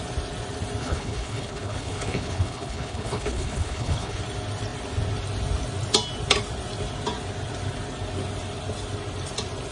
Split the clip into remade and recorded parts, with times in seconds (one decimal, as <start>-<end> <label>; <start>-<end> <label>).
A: 0.0-0.8 recorded; 0.8-4.2 remade; 4.2-9.7 recorded